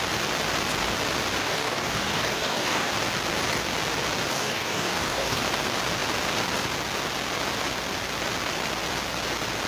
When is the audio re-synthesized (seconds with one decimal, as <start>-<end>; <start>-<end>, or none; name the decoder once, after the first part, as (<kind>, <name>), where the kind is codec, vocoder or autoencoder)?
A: 1.4-2.9 (codec, DAC); 4.3-5.4